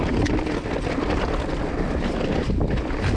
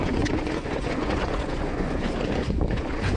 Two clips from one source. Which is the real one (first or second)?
first